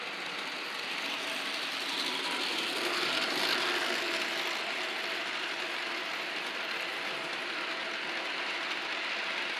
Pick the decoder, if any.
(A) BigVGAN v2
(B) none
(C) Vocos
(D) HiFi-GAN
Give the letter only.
B